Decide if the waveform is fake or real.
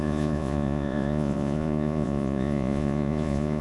fake